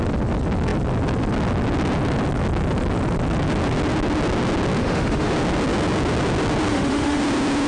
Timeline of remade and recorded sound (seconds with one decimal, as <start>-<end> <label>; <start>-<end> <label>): 0.0-4.8 recorded; 4.8-5.3 remade; 5.3-6.7 recorded; 6.7-7.2 remade; 7.2-7.7 recorded

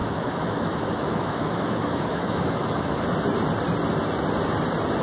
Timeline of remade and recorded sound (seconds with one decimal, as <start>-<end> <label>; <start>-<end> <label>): 0.0-3.0 remade; 3.0-5.0 recorded

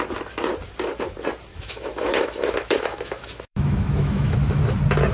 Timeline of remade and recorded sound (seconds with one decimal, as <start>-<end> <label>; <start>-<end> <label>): 0.0-1.5 recorded; 1.5-4.6 remade; 4.6-5.1 recorded

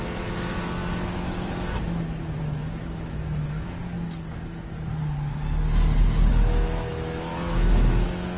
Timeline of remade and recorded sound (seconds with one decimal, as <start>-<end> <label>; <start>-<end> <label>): 0.0-3.8 remade; 3.8-6.3 recorded; 6.3-8.4 remade

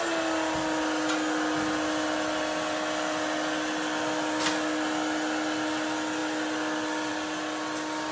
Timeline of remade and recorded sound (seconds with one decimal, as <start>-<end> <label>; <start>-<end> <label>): 0.0-8.1 recorded